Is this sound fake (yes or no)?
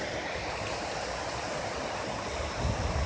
yes